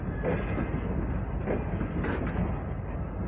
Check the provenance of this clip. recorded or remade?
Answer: recorded